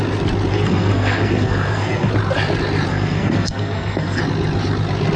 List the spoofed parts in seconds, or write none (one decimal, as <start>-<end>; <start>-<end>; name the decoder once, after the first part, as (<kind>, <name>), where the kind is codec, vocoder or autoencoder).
0.5-2.1 (codec, SNAC); 2.9-4.2

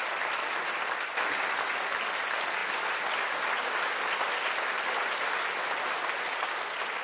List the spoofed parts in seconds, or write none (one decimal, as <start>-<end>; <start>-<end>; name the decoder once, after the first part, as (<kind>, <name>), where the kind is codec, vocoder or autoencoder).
none